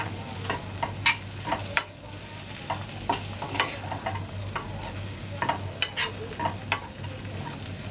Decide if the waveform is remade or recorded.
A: recorded